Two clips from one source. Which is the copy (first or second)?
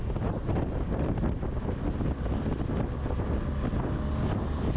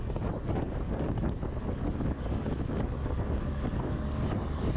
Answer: second